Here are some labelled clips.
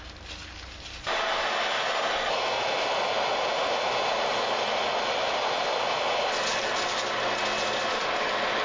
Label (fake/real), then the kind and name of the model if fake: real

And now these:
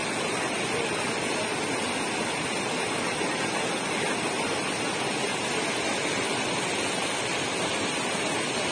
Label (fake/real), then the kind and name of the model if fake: real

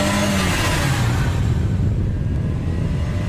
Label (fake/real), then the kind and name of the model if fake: real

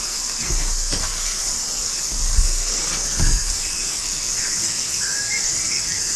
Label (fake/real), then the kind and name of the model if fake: fake, codec, SNAC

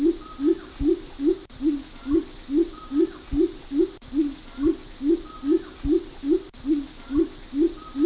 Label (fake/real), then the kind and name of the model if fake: real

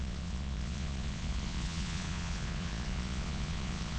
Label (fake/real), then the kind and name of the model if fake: fake, vocoder, Vocos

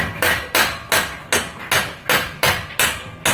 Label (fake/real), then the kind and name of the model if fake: real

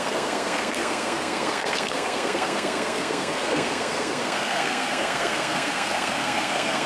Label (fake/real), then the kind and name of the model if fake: fake, codec, SNAC